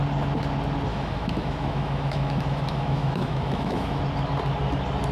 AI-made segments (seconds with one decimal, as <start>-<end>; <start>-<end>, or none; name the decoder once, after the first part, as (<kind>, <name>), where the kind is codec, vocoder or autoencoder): 0.9-4.0 (autoencoder, DAC-VAE)